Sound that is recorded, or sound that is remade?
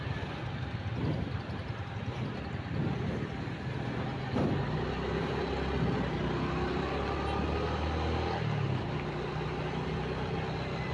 recorded